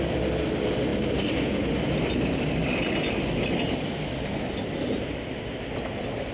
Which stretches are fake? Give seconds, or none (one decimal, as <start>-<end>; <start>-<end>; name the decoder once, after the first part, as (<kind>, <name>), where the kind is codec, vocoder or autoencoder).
none